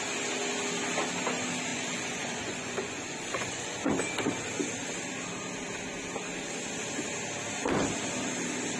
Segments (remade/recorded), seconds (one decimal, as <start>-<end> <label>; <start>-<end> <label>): 0.0-1.7 recorded; 1.7-3.8 remade; 3.8-8.8 recorded